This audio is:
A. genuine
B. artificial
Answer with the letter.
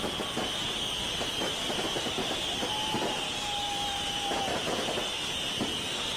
A